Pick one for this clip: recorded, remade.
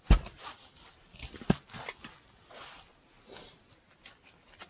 recorded